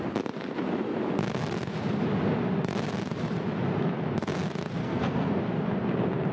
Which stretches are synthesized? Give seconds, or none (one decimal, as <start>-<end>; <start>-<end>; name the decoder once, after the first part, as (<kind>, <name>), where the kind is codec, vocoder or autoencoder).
4.8-5.4 (codec, SNAC)